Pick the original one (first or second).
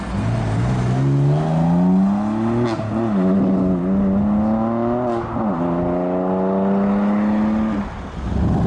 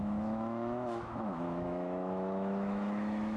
first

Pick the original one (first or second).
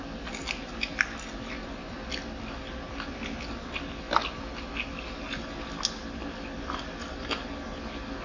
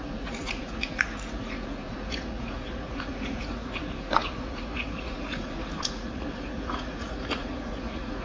first